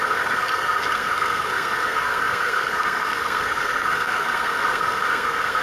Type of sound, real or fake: fake